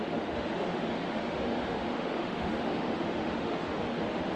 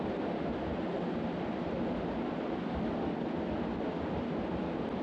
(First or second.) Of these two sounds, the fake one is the first